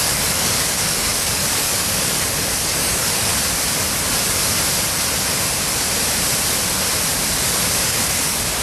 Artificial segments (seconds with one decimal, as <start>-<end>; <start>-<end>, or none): 0.0-3.3; 7.7-8.6